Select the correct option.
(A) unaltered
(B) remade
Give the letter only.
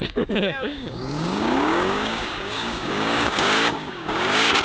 B